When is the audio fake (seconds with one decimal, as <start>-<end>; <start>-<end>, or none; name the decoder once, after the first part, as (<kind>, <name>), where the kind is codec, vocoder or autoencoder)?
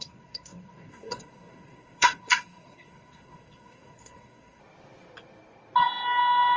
0.0-4.6 (codec, SNAC)